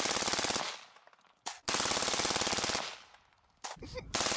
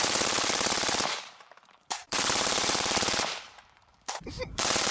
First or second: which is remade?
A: second